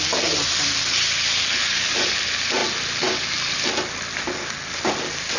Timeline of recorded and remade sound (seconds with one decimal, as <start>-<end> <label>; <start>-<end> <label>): 0.0-5.4 recorded